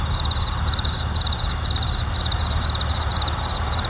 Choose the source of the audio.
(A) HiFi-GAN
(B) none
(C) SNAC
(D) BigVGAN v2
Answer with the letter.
B